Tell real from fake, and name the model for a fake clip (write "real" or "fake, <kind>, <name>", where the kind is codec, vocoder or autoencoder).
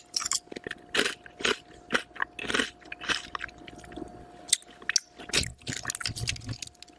real